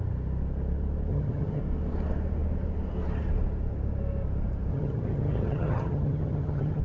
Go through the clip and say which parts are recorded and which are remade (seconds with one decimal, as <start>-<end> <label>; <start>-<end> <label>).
0.0-1.1 recorded; 1.1-1.6 remade; 1.6-4.7 recorded; 4.7-6.8 remade